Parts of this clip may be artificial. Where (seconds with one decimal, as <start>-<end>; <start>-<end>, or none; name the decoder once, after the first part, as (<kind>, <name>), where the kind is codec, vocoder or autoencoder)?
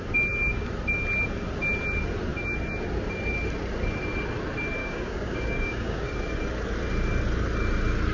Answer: 4.8-6.0 (codec, DAC)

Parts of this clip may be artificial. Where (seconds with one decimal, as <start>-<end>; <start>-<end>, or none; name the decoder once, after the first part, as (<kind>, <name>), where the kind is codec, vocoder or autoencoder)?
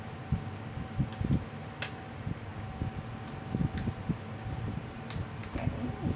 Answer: none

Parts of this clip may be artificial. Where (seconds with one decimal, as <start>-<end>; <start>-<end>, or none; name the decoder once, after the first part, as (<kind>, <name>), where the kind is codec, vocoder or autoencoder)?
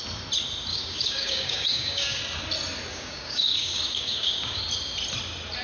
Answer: 0.7-2.2 (codec, DAC); 2.9-4.6